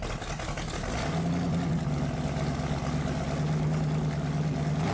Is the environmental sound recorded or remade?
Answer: recorded